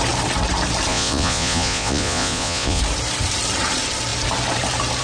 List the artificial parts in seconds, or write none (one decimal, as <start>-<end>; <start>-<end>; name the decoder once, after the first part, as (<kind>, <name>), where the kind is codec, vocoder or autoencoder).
0.9-2.8 (vocoder, Vocos)